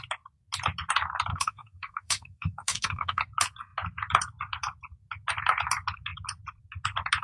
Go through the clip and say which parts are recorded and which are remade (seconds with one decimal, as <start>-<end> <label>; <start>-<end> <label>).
0.0-1.3 recorded; 1.3-3.2 remade; 3.2-7.2 recorded